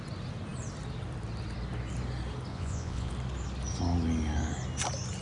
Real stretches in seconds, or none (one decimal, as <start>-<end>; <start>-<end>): 0.0-2.5; 3.1-5.2